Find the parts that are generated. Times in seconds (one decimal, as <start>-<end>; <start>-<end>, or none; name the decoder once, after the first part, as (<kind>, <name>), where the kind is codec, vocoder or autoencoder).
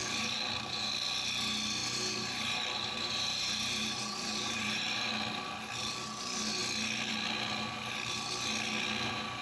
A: 0.0-0.9 (vocoder, BigVGAN v2); 1.8-5.1